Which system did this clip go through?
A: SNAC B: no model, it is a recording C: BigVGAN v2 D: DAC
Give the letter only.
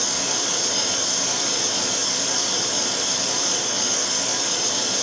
D